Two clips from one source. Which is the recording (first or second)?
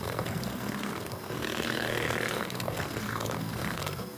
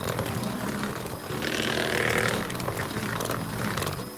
second